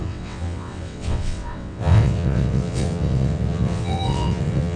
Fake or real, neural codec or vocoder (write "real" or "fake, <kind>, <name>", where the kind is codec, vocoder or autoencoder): fake, vocoder, WaveNeXt